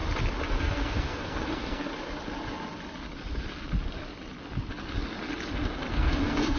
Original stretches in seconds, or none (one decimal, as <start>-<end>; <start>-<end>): 0.0-0.5; 1.9-5.9